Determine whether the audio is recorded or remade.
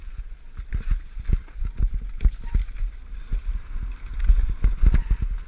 recorded